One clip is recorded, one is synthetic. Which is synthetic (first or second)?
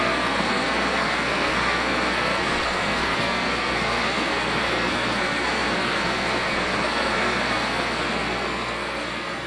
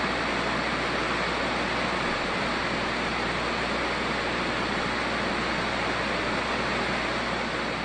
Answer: first